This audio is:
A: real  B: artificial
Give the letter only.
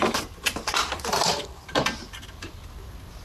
A